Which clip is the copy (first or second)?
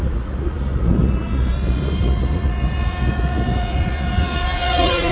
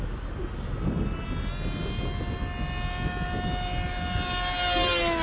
first